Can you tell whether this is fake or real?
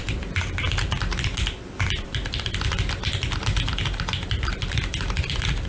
fake